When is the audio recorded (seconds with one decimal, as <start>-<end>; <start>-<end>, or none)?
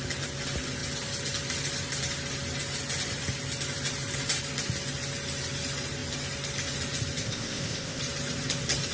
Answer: 0.0-7.2; 8.0-8.9